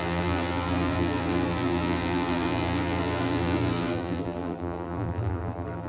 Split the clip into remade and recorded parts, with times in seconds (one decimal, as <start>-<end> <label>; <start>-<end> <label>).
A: 0.0-5.9 remade